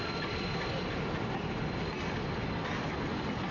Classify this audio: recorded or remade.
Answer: recorded